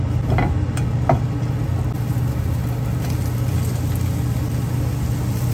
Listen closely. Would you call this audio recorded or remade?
recorded